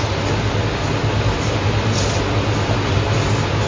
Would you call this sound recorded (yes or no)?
yes